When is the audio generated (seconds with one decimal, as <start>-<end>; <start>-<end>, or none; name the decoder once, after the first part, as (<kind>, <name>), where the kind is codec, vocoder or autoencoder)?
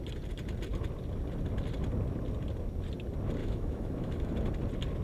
3.4-4.3 (autoencoder, DAC-VAE)